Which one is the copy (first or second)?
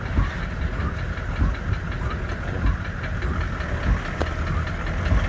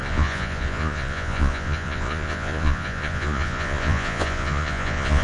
second